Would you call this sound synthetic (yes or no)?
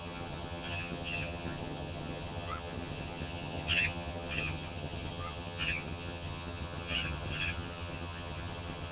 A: yes